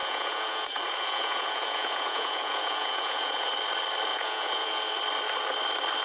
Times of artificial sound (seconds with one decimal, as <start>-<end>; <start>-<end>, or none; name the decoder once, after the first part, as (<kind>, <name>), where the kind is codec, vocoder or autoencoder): 0.0-3.5 (vocoder, Vocos); 4.1-4.9